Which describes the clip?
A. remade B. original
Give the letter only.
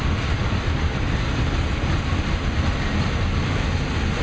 B